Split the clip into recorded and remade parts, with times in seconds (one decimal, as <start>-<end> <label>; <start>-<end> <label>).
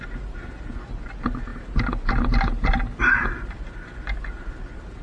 0.0-5.0 recorded